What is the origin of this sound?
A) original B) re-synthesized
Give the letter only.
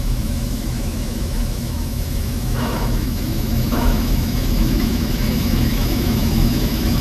B